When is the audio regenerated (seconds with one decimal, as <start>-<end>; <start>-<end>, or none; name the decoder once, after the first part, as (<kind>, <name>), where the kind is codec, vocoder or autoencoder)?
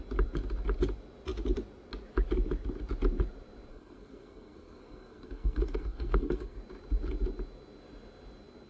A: 3.7-6.6 (codec, SNAC)